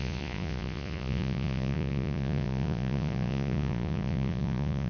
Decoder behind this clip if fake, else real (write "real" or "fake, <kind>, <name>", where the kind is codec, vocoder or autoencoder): fake, vocoder, Vocos